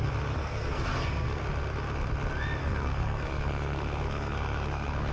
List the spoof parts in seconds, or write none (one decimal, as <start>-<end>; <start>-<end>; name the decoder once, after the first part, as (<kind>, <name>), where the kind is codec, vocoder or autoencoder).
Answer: 0.4-1.4 (codec, SNAC); 2.6-5.1